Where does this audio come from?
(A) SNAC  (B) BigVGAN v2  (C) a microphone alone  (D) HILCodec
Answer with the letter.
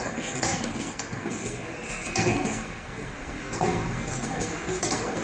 A